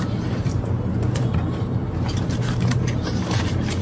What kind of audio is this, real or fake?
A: fake